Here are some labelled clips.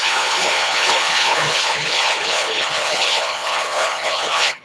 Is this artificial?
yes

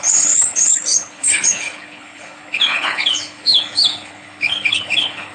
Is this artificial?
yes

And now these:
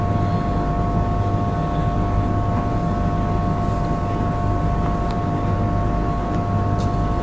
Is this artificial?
no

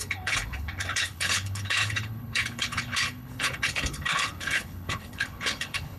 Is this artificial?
yes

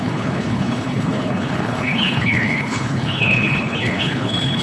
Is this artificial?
yes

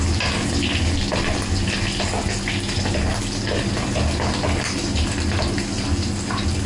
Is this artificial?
no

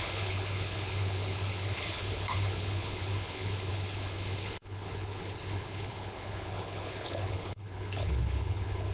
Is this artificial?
yes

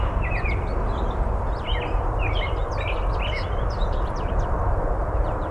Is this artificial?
no